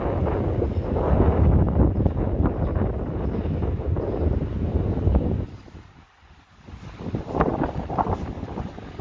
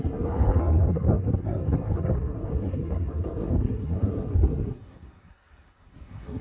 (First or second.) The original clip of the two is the first